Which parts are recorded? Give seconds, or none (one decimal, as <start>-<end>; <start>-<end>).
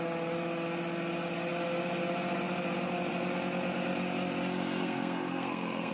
0.0-4.8